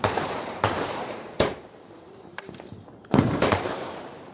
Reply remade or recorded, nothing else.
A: remade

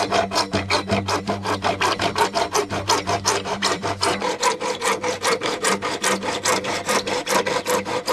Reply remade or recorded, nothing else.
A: remade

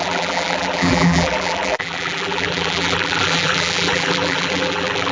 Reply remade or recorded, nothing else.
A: remade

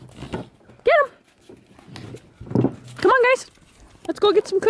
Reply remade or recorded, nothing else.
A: recorded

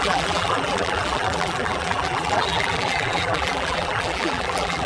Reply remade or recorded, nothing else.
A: remade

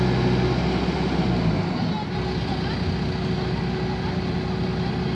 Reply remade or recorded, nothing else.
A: recorded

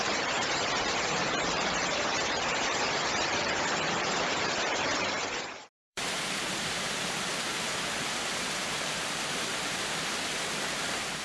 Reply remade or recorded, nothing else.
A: remade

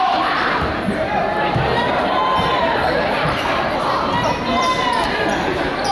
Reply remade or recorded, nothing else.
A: remade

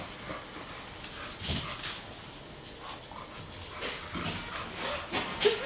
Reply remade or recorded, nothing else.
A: recorded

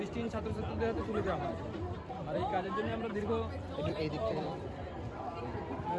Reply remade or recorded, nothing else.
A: remade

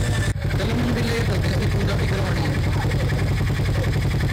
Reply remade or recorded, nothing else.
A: remade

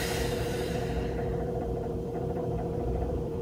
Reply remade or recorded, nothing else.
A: remade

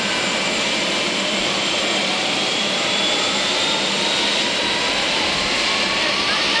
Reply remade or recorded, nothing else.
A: remade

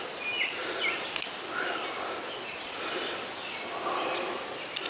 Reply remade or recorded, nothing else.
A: recorded